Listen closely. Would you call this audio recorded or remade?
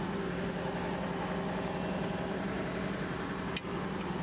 recorded